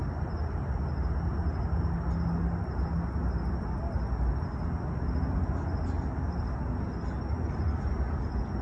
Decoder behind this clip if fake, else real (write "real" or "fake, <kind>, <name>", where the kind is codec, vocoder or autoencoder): real